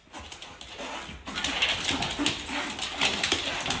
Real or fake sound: real